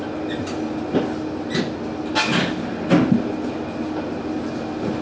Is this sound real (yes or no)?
yes